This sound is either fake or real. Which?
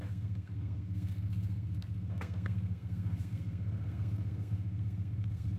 fake